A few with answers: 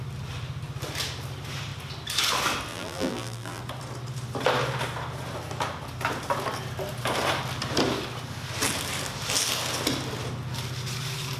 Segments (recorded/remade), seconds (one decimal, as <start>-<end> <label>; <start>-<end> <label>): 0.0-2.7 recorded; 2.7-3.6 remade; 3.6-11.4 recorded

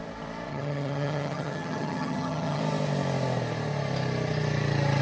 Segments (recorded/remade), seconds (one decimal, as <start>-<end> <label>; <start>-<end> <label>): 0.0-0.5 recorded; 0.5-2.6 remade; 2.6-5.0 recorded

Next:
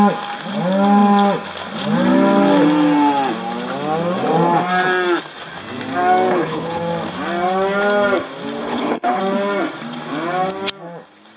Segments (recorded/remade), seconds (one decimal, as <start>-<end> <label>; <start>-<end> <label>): 0.0-6.3 recorded; 6.3-6.8 remade; 6.8-8.6 recorded; 8.6-9.2 remade; 9.2-11.4 recorded

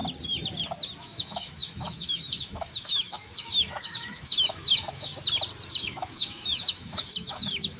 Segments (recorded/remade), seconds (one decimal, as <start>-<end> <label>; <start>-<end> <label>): 0.0-1.0 recorded; 1.0-5.1 remade; 5.1-5.8 recorded; 5.8-7.8 remade

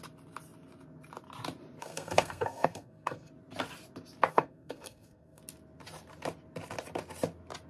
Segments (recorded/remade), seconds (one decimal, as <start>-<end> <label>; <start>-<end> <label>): 0.0-1.8 recorded; 1.8-3.3 remade; 3.3-4.3 recorded; 4.3-5.4 remade; 5.4-7.7 recorded